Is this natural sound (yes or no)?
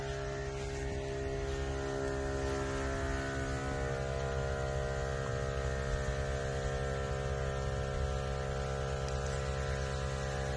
yes